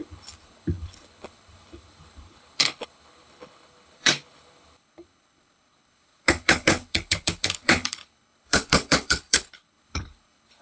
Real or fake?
fake